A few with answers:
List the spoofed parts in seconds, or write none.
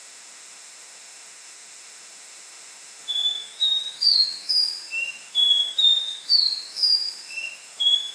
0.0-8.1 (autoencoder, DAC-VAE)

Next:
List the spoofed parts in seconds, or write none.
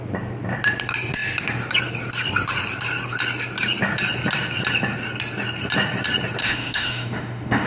6.4-7.7 (autoencoder, DAC-VAE)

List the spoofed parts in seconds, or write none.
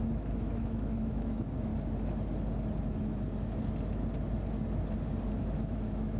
0.0-1.7 (autoencoder, DAC-VAE); 5.4-6.2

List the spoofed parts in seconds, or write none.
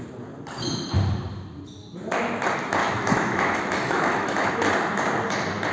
2.8-4.5 (autoencoder, DAC-VAE)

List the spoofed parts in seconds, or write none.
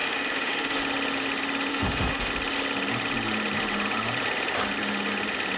0.0-0.8 (autoencoder, DAC-VAE); 1.7-2.3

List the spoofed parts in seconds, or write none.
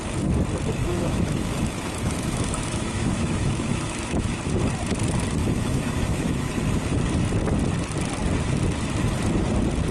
0.8-4.4 (autoencoder, DAC-VAE); 5.4-6.5